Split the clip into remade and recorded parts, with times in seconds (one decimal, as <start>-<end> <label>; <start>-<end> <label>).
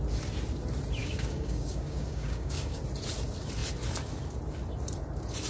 0.0-1.0 recorded; 1.0-2.8 remade; 2.8-5.5 recorded